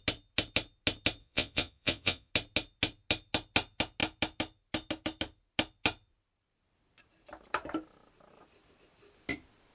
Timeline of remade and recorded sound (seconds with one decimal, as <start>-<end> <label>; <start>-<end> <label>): 0.0-1.2 recorded; 1.2-2.3 remade; 2.3-9.7 recorded